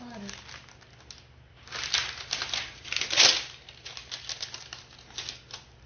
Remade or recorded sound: recorded